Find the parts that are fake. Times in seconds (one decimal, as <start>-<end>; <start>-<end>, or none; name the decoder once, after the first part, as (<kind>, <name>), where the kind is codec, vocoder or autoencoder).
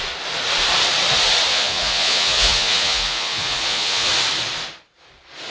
1.5-4.1 (vocoder, Vocos)